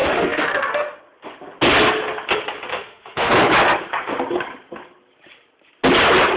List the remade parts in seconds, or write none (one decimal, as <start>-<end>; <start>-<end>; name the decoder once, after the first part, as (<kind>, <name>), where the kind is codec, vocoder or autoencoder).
0.0-1.0 (autoencoder, DAC-VAE); 2.7-3.3